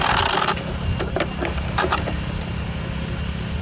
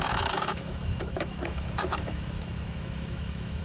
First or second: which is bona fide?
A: first